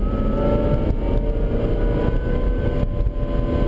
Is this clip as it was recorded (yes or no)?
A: yes